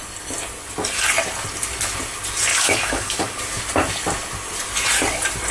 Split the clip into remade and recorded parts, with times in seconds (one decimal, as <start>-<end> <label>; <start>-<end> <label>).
0.0-2.5 recorded; 2.5-3.6 remade; 3.6-5.5 recorded